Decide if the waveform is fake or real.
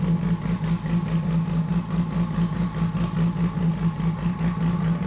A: real